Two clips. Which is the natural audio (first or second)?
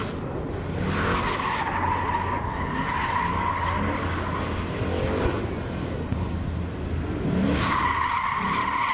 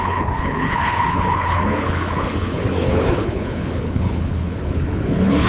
first